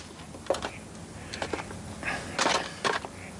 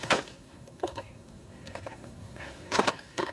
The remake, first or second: second